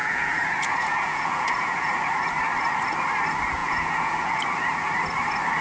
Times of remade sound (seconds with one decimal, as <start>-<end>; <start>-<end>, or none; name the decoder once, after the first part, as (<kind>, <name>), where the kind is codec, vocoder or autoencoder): 0.0-1.9 (vocoder, Vocos); 3.6-4.4